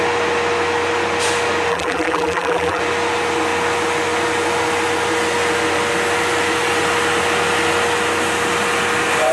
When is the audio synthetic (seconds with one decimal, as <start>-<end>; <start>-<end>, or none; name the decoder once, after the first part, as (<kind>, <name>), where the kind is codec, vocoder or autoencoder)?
1.7-2.8 (vocoder, BigVGAN v2)